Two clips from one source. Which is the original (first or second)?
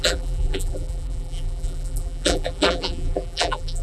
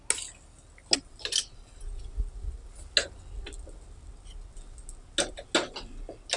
second